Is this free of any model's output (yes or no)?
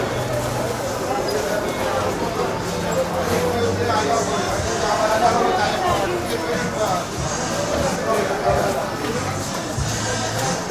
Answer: yes